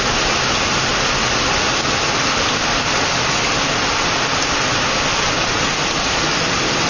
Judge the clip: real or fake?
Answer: real